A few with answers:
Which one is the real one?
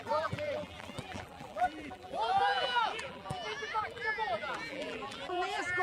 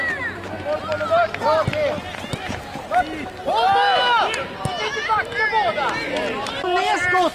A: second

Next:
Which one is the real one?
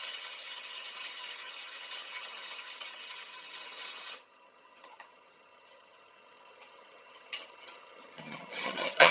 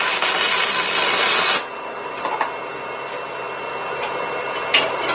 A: second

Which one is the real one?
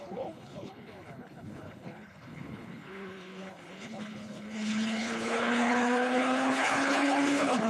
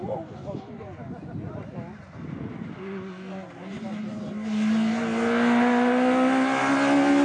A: second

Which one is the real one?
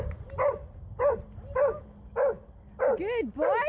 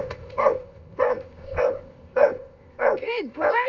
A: first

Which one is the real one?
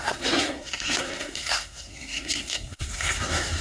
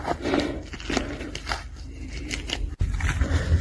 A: second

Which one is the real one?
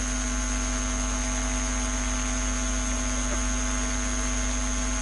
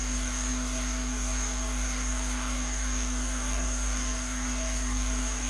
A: first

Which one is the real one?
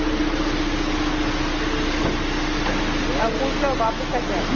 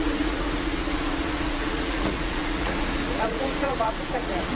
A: first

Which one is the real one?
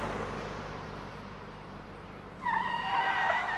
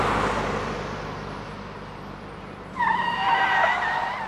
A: second